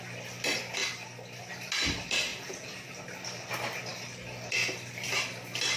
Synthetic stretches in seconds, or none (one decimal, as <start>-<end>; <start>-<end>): 2.3-2.9